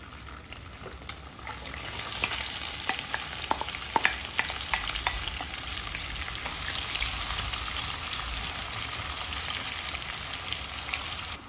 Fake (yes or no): no